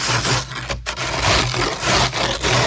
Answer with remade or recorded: recorded